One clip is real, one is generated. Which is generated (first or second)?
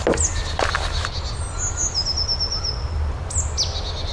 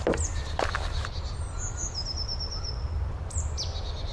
second